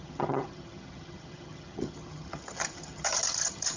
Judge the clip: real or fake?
fake